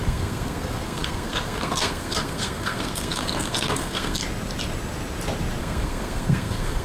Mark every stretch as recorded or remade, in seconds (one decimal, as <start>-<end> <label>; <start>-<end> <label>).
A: 0.0-4.2 remade; 4.2-5.6 recorded; 5.6-6.8 remade